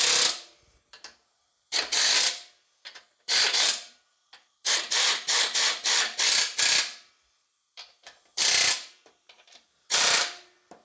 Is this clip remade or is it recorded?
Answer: remade